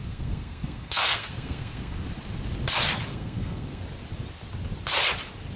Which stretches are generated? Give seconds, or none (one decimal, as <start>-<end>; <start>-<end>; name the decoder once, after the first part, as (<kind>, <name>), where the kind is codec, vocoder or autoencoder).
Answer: 0.0-2.0 (codec, SNAC); 3.1-3.8